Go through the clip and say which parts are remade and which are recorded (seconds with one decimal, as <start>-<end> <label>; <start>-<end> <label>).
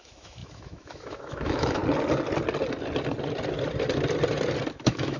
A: 0.0-1.8 remade; 1.8-4.7 recorded; 4.7-5.2 remade